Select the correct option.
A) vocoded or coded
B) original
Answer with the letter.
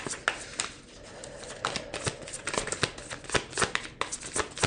B